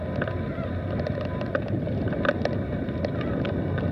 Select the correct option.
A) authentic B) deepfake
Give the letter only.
A